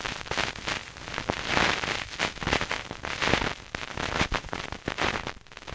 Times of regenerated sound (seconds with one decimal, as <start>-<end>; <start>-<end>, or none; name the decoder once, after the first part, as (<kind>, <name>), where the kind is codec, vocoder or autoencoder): none